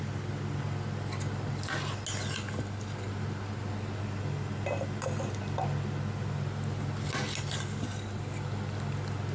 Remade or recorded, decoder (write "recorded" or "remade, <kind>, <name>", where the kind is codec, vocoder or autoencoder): recorded